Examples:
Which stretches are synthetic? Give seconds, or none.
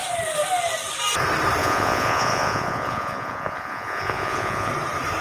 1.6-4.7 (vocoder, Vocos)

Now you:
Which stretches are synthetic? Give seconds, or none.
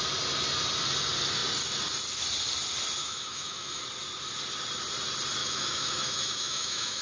3.0-3.8 (autoencoder, DAC-VAE); 5.4-7.0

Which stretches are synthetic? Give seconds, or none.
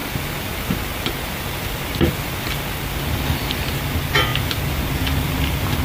3.5-5.8 (vocoder, BigVGAN v2)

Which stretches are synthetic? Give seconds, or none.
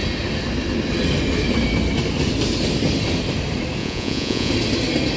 3.8-4.5 (vocoder, Vocos)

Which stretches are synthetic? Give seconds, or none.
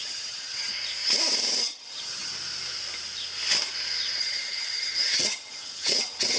0.0-0.7 (vocoder, HiFi-GAN); 1.6-2.3; 4.2-6.4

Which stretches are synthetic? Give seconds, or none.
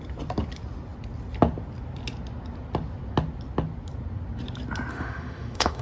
4.9-5.8 (autoencoder, DAC-VAE)